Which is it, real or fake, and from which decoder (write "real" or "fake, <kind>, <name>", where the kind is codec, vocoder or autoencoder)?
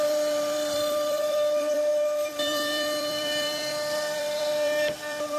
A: fake, vocoder, BigVGAN v2